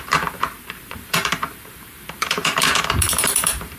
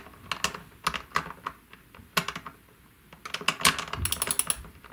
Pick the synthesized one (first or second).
first